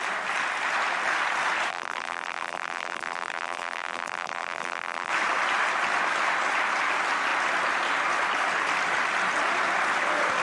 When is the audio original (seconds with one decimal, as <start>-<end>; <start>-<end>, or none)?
0.0-1.7; 5.1-10.4

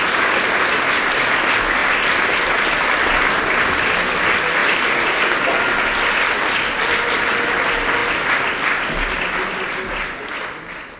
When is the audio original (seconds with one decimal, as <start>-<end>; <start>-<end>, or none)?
0.0-11.0

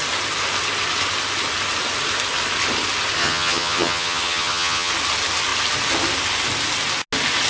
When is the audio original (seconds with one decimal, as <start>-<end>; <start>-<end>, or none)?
0.0-3.2; 4.9-7.5

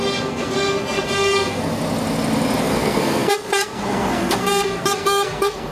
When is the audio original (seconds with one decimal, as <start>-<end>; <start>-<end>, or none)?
1.8-2.6